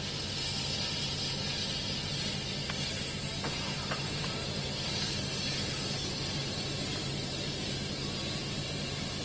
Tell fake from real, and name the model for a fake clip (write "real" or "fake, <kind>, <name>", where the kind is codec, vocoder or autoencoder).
real